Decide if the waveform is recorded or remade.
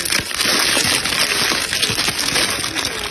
recorded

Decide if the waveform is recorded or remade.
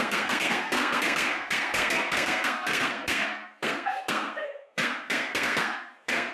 remade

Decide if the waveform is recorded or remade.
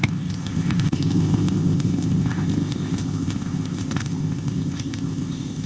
remade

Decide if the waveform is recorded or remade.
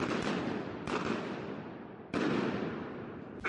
recorded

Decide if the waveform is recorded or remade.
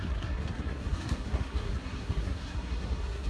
remade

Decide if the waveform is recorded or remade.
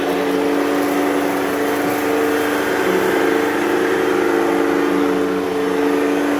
recorded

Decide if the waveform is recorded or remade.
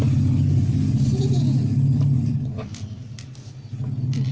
recorded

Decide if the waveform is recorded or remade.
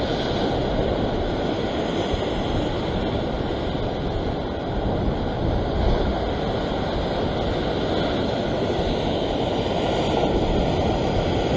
recorded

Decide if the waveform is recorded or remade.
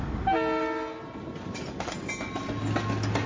recorded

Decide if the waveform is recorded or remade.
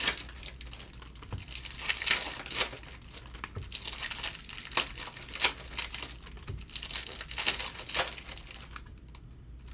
recorded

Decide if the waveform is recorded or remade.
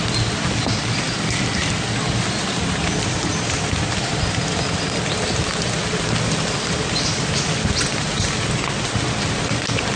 recorded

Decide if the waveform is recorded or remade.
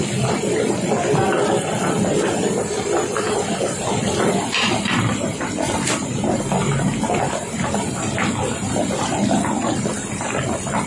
recorded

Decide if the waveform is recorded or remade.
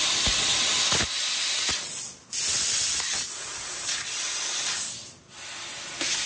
recorded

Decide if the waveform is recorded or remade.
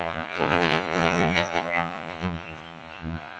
remade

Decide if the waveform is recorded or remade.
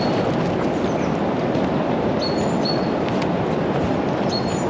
recorded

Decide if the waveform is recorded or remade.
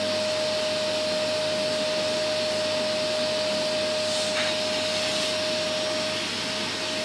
recorded